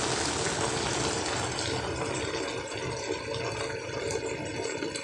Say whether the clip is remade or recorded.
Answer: recorded